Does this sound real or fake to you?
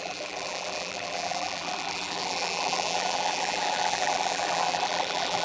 fake